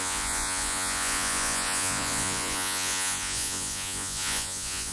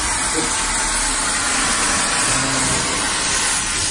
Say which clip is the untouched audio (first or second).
second